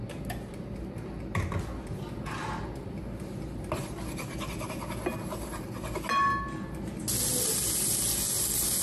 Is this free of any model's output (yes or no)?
yes